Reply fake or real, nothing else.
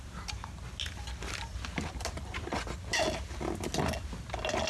real